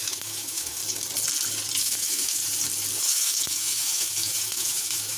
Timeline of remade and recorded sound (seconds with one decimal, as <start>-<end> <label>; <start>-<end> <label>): 0.0-0.8 remade; 0.8-1.8 recorded; 1.8-2.4 remade; 2.4-3.0 recorded; 3.0-5.2 remade